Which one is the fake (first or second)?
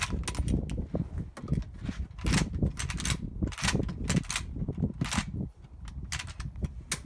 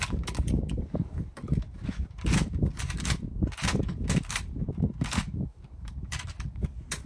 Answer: second